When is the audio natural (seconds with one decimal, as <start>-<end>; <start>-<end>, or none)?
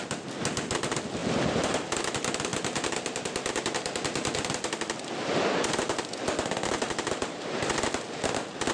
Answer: 0.0-8.7